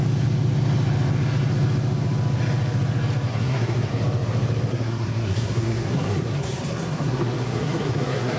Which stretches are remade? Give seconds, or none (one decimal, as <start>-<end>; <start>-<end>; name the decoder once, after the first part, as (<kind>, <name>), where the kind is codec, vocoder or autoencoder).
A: 3.3-3.9 (codec, SNAC); 4.7-8.4